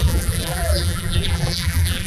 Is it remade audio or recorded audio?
remade